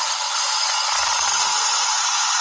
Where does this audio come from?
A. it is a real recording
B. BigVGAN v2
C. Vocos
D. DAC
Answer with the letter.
C